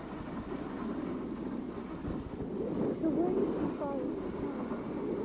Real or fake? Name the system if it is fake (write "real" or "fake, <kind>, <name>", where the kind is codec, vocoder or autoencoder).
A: real